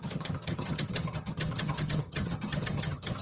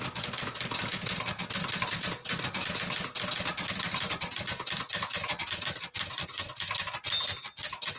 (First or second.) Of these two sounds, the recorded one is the second